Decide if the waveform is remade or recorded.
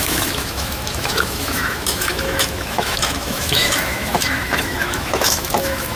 remade